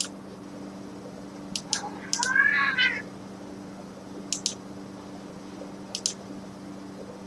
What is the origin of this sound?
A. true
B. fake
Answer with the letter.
A